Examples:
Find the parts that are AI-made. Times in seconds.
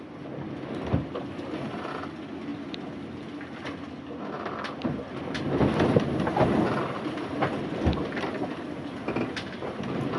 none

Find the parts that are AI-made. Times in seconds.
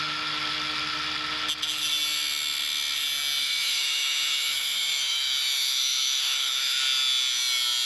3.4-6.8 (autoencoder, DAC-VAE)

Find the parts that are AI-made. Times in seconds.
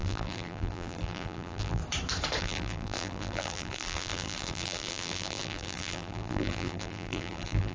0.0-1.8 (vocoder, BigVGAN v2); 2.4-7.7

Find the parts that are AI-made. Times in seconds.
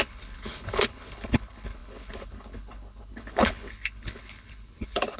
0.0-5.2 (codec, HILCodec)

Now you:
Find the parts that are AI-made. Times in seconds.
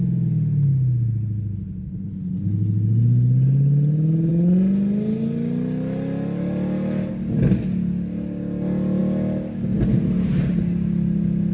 none